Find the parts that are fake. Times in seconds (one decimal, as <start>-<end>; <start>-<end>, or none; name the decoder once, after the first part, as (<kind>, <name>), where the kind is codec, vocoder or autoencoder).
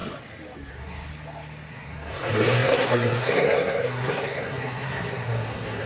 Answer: 0.7-1.1 (codec, SNAC); 1.7-5.9